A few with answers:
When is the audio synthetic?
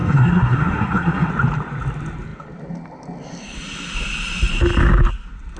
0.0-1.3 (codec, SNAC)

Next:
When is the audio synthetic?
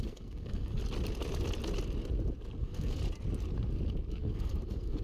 0.0-0.8 (codec, SNAC); 2.6-3.0; 4.1-5.0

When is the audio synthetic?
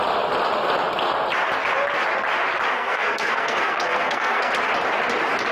2.7-4.5 (codec, SNAC)